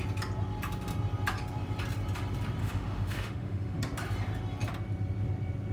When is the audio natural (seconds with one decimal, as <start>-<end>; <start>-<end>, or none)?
0.0-2.6; 3.8-5.7